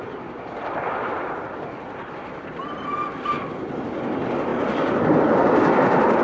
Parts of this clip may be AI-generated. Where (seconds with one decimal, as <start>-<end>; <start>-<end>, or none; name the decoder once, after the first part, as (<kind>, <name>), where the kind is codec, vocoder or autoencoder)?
none